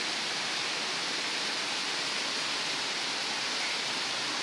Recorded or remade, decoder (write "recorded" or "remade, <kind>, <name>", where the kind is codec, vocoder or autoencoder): remade, vocoder, BigVGAN v2